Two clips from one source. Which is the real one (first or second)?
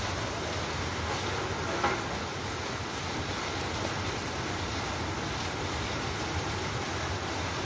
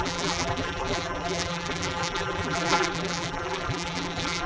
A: first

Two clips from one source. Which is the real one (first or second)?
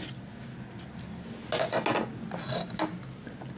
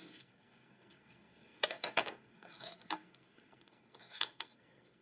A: first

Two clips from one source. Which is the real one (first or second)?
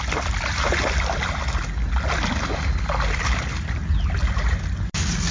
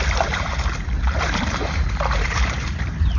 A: first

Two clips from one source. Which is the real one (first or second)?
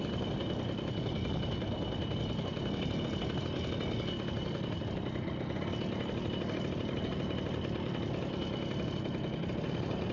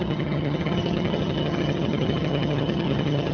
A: first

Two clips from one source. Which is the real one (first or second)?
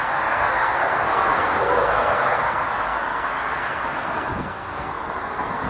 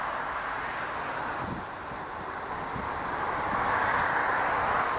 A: second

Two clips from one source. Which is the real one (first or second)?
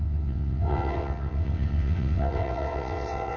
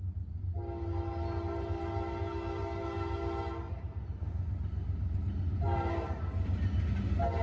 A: second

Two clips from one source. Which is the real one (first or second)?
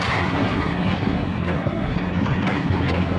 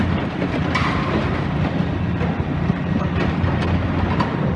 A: second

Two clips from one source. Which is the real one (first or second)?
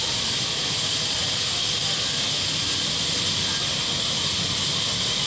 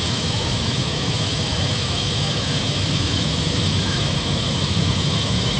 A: first